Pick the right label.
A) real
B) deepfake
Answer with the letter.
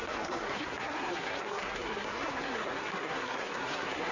B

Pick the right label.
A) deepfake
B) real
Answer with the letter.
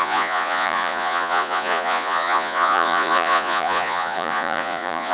A